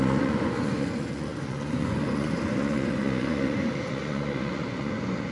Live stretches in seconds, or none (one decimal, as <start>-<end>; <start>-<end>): none